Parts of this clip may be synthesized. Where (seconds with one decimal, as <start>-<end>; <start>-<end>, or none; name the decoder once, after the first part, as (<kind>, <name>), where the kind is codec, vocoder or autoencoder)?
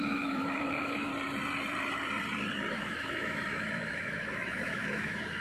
0.0-1.1 (autoencoder, DAC-VAE); 2.7-5.4